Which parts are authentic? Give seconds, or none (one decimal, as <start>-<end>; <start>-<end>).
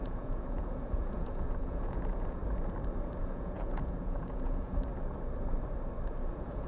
2.4-3.2; 4.9-6.3